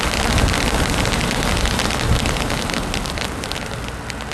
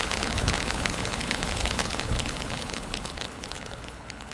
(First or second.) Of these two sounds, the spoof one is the second